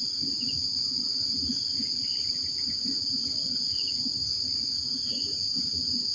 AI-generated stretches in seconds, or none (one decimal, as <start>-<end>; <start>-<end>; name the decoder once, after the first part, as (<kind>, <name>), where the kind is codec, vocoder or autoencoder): none